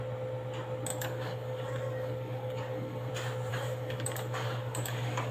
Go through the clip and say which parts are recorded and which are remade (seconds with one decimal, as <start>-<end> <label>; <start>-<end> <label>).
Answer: 0.0-0.9 recorded; 0.9-3.1 remade; 3.1-3.5 recorded; 3.5-5.3 remade